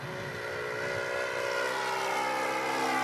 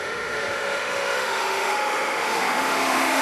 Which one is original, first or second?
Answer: first